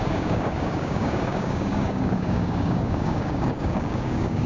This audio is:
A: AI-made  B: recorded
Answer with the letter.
A